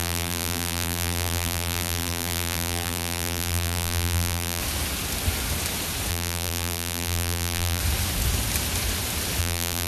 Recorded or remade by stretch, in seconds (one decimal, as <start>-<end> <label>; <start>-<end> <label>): 0.0-4.6 remade; 4.6-6.1 recorded; 6.1-7.8 remade; 7.8-9.4 recorded; 9.4-9.9 remade